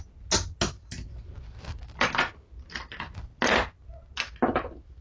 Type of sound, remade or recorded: recorded